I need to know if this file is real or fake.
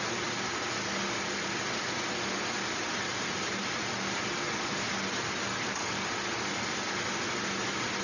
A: real